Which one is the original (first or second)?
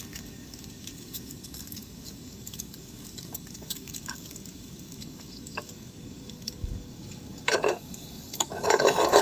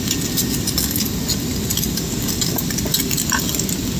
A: second